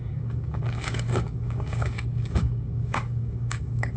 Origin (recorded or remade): remade